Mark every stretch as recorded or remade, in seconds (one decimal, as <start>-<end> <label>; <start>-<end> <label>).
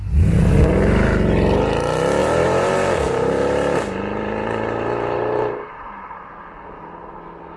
0.0-2.2 recorded; 2.2-6.3 remade; 6.3-7.6 recorded